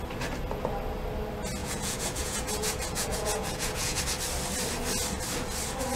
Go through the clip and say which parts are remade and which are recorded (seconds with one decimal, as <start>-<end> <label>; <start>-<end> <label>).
0.0-1.6 recorded; 1.6-4.0 remade; 4.0-6.0 recorded

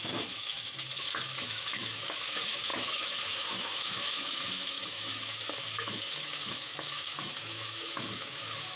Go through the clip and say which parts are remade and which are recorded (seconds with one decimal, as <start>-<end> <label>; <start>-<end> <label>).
0.0-8.8 remade